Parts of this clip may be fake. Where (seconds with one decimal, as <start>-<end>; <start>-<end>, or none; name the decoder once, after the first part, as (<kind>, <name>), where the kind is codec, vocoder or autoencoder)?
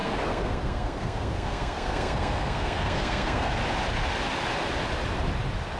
0.0-3.5 (codec, SNAC)